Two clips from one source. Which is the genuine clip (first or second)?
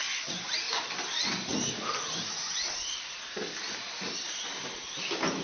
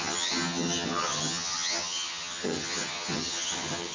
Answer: first